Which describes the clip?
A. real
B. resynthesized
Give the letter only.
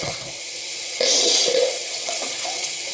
B